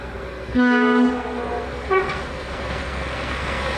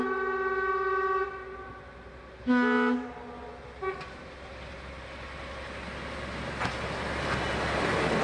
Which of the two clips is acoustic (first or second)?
second